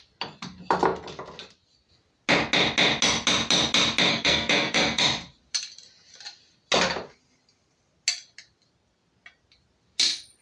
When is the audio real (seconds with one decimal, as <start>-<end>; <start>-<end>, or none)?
0.0-4.1; 5.0-10.4